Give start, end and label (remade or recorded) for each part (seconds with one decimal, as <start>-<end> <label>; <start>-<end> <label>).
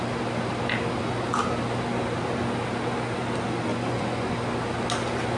0.0-3.7 recorded; 3.7-4.3 remade; 4.3-5.4 recorded